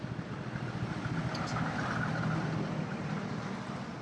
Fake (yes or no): no